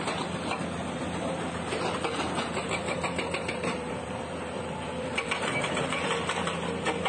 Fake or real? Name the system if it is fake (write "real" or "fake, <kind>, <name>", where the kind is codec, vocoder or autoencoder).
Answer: fake, vocoder, BigVGAN v2